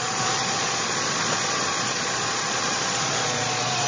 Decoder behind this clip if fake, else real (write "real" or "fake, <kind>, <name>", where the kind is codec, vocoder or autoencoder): fake, vocoder, Vocos